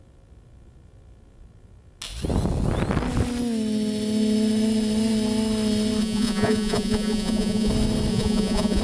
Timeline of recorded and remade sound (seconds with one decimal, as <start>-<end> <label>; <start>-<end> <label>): 0.0-6.0 recorded; 6.0-7.7 remade; 7.7-8.1 recorded; 8.1-8.8 remade